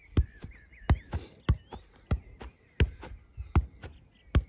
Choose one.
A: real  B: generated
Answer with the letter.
A